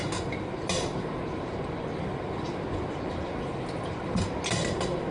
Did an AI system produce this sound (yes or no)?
no